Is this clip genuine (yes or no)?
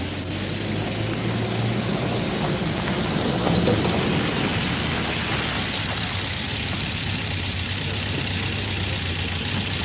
yes